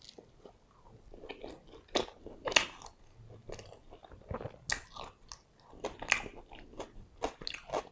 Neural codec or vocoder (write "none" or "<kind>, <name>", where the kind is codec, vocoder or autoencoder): none